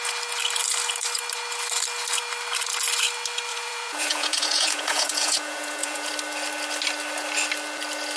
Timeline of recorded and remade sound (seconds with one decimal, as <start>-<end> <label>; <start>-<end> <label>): 0.0-3.5 recorded; 3.5-6.1 remade; 6.1-8.2 recorded